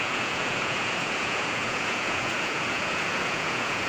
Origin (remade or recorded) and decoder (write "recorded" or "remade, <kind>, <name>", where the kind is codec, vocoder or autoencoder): remade, vocoder, Vocos